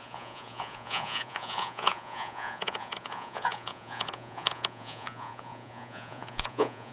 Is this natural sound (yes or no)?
no